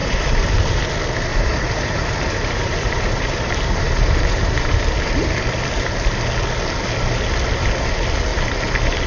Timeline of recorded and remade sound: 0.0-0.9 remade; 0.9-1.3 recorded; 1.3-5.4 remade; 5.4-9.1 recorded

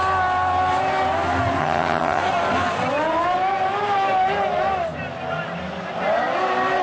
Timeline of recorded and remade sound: 0.0-1.6 recorded; 1.6-2.2 remade; 2.2-6.8 recorded

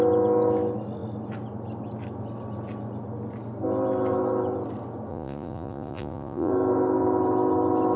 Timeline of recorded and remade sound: 0.0-5.1 recorded; 5.1-6.5 remade; 6.5-8.0 recorded

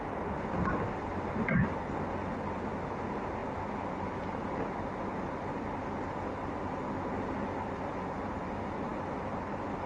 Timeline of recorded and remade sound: 0.0-9.9 recorded

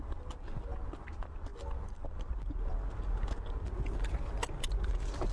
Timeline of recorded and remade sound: 0.0-5.3 recorded